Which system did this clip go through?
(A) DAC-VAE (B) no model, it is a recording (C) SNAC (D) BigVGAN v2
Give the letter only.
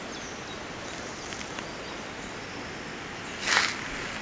B